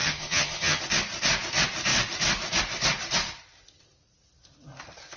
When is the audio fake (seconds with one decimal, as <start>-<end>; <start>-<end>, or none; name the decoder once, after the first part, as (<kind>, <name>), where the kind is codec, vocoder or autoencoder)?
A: 0.0-0.8 (vocoder, HiFi-GAN)